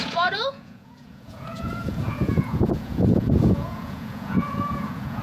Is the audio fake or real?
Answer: fake